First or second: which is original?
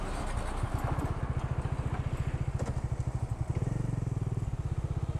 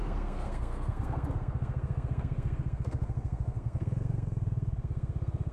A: first